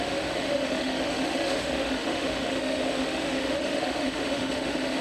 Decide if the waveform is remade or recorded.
remade